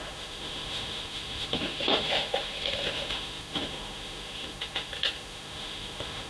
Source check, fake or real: fake